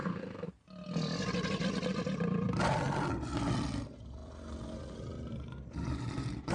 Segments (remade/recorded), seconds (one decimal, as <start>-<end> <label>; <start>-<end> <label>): 0.0-0.5 remade; 0.5-6.5 recorded